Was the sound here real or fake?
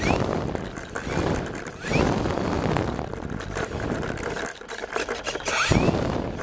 real